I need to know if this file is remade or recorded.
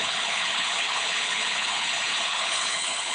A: remade